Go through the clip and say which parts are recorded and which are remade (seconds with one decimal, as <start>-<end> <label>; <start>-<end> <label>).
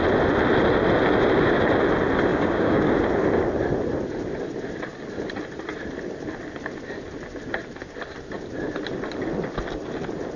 0.0-2.3 recorded; 2.3-2.9 remade; 2.9-10.4 recorded